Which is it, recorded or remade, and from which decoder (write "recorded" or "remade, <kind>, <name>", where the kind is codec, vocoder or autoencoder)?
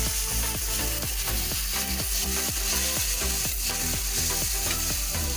recorded